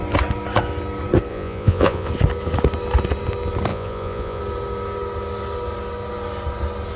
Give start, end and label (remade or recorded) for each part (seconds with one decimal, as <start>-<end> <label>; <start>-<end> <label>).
0.0-1.3 recorded; 1.3-2.1 remade; 2.1-3.7 recorded; 3.7-4.4 remade; 4.4-7.0 recorded